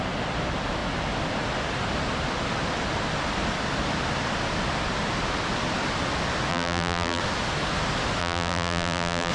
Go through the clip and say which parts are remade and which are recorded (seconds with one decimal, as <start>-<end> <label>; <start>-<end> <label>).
0.0-6.5 recorded; 6.5-7.2 remade; 7.2-8.2 recorded; 8.2-9.3 remade

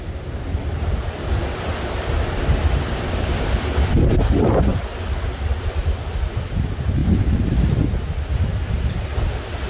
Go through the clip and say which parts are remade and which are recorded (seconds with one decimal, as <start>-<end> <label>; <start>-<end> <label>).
0.0-9.7 remade

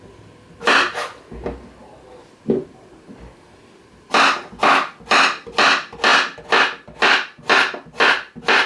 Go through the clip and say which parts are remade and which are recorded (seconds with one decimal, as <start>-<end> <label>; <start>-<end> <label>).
0.0-8.7 recorded

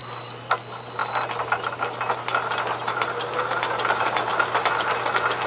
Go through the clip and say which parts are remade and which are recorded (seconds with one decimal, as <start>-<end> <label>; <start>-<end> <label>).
0.0-5.5 recorded

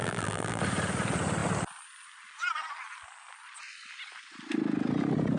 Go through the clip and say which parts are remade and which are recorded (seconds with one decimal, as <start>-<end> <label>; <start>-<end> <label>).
0.0-0.6 remade; 0.6-5.4 recorded

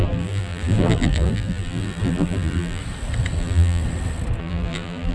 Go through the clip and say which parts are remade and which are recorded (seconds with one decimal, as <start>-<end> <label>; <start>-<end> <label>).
0.0-2.8 remade; 2.8-3.4 recorded; 3.4-3.8 remade; 3.8-4.4 recorded; 4.4-5.1 remade